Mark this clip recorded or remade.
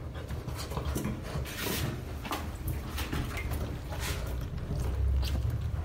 recorded